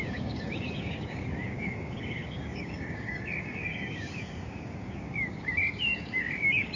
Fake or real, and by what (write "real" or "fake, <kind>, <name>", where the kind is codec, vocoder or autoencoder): fake, codec, DAC